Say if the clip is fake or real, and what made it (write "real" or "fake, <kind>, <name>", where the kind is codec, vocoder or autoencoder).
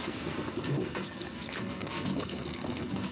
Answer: fake, codec, SNAC